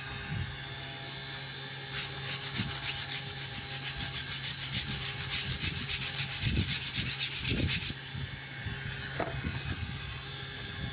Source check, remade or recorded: recorded